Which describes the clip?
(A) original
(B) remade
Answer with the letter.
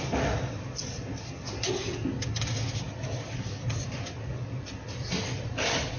A